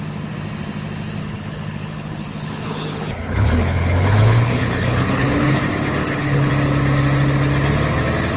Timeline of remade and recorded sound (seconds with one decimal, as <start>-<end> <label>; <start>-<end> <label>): 0.0-1.2 recorded; 1.2-5.6 remade; 5.6-6.0 recorded; 6.0-6.5 remade; 6.5-8.4 recorded